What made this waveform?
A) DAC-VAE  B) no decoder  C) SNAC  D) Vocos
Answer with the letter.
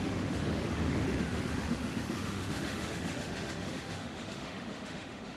A